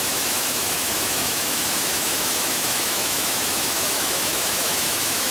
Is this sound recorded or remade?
remade